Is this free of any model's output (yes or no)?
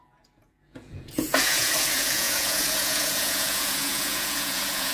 no